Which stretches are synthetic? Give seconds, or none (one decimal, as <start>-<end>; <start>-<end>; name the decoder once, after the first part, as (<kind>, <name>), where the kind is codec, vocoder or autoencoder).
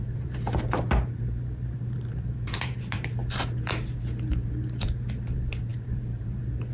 0.0-3.2 (vocoder, BigVGAN v2); 4.3-6.7